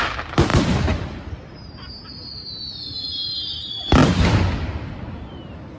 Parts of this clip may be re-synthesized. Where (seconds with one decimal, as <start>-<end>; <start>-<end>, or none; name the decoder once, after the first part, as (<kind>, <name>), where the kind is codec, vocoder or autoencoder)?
none